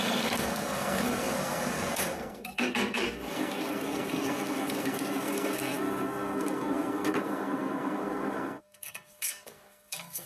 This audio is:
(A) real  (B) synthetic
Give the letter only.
B